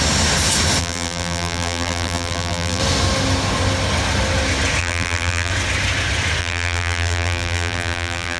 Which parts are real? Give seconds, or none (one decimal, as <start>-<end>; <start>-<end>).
0.0-0.8; 2.8-4.8; 5.5-6.4